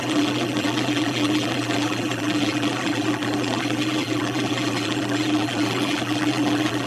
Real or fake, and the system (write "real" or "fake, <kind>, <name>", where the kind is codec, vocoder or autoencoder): fake, vocoder, BigVGAN v2